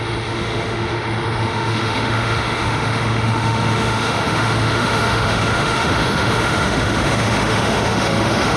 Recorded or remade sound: remade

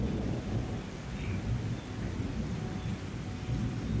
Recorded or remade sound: recorded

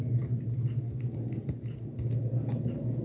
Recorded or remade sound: recorded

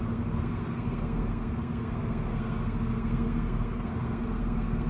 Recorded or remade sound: remade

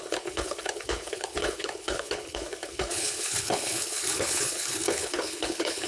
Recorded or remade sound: remade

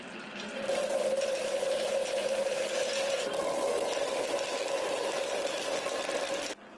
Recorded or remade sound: recorded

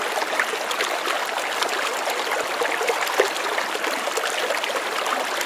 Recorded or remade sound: recorded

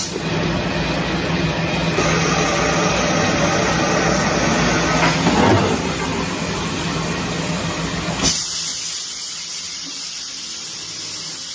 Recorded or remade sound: recorded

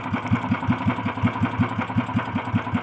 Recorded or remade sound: recorded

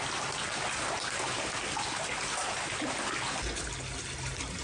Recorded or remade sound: recorded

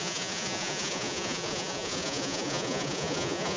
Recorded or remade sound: remade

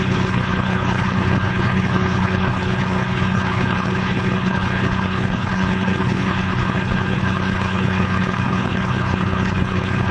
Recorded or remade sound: remade